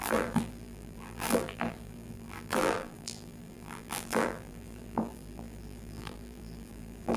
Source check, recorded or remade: remade